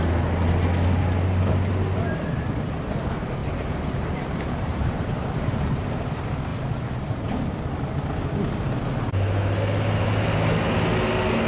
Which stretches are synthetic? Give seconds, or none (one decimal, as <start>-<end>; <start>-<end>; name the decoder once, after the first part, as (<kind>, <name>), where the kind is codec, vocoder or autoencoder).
3.4-5.7 (vocoder, BigVGAN v2)